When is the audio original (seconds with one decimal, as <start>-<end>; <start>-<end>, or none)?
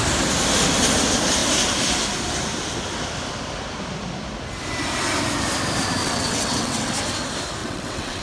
0.0-6.0; 6.9-7.6